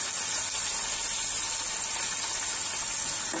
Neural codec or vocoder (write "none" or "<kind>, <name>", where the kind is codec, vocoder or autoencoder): none